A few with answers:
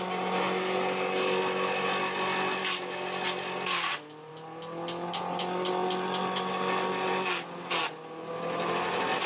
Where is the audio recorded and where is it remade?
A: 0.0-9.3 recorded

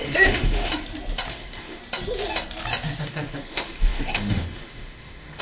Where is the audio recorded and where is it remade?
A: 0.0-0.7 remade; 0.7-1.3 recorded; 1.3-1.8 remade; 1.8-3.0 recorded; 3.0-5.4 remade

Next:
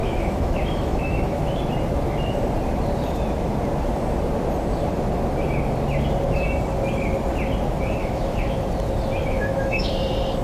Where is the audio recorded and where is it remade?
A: 0.0-1.5 remade; 1.5-8.0 recorded; 8.0-8.6 remade; 8.6-9.2 recorded; 9.2-9.9 remade; 9.9-10.4 recorded

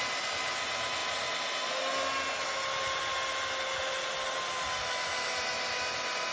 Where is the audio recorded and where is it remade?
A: 0.0-6.3 recorded